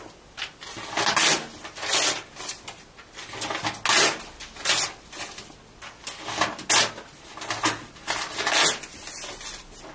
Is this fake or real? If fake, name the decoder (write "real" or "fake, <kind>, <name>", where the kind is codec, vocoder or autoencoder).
real